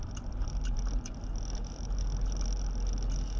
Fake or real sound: real